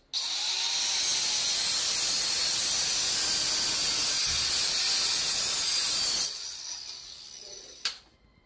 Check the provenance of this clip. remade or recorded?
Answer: recorded